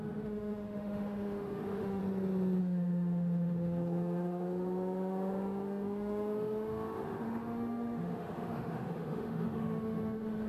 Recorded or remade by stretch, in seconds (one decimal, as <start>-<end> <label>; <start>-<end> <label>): 0.0-2.0 remade; 2.0-2.6 recorded; 2.6-10.5 remade